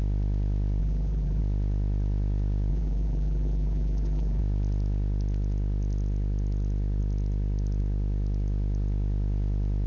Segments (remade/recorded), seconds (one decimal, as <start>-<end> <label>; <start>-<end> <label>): 0.0-0.8 recorded; 0.8-1.4 remade; 1.4-2.7 recorded; 2.7-4.4 remade; 4.4-9.9 recorded